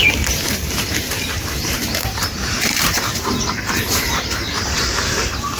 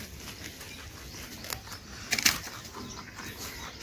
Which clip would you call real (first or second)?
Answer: second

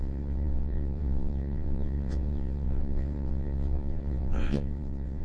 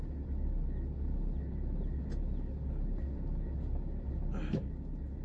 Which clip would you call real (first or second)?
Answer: second